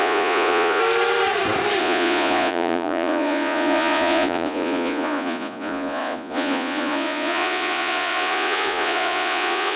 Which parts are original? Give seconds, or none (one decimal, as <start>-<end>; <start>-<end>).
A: 0.8-1.8